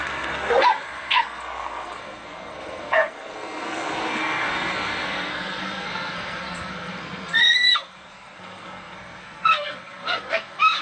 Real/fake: fake